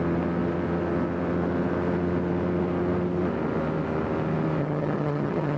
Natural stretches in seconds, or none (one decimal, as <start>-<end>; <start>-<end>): 0.0-4.6